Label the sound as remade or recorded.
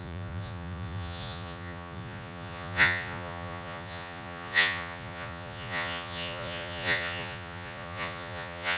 remade